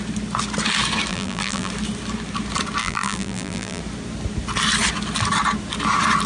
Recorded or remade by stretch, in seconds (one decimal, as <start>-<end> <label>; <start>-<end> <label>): 0.0-1.1 recorded; 1.1-1.7 remade; 1.7-2.8 recorded; 2.8-3.8 remade; 3.8-6.3 recorded